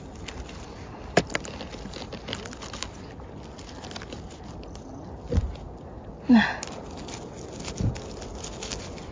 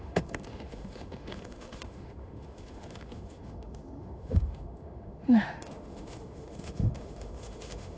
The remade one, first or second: second